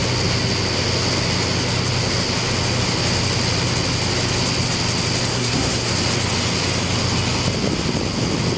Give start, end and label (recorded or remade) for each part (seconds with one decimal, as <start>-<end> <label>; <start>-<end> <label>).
0.0-5.3 recorded; 5.3-5.9 remade; 5.9-8.6 recorded